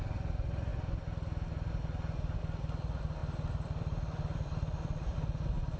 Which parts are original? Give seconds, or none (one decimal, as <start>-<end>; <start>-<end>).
0.0-5.8